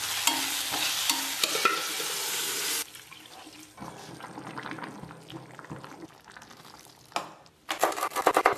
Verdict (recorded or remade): recorded